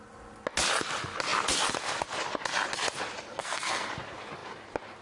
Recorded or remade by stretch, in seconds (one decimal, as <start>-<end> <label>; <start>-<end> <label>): 0.0-3.3 recorded; 3.3-3.9 remade; 3.9-5.0 recorded